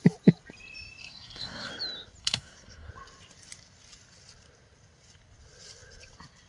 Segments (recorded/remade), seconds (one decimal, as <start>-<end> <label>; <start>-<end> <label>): 0.0-1.0 recorded; 1.0-1.7 remade; 1.7-2.2 recorded; 2.2-2.9 remade; 2.9-6.5 recorded